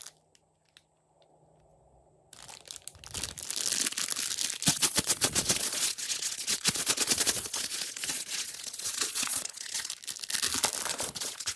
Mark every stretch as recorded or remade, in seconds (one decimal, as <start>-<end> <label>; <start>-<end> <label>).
0.0-4.7 recorded; 4.7-9.9 remade; 9.9-10.9 recorded; 10.9-11.6 remade